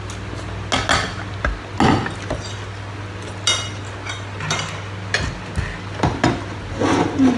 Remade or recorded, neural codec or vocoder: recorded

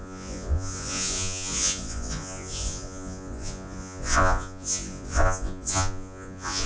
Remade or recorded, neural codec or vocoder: remade, vocoder, Vocos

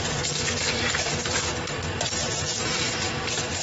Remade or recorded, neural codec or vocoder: recorded